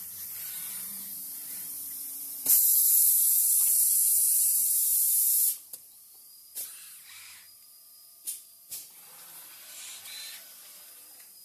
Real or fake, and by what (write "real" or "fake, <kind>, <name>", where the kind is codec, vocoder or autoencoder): fake, vocoder, BigVGAN v2